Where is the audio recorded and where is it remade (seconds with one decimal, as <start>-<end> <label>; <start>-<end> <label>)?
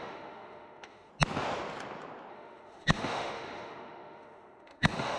0.0-1.1 remade; 1.1-2.3 recorded; 2.3-5.2 remade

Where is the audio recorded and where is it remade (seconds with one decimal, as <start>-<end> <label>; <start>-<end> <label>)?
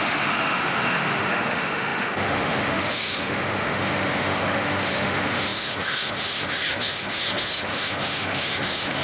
0.0-9.0 remade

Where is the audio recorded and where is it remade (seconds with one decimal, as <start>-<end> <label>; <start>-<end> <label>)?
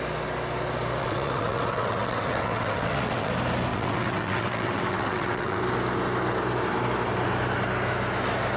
0.0-1.0 recorded; 1.0-3.3 remade; 3.3-3.7 recorded; 3.7-5.6 remade; 5.6-8.6 recorded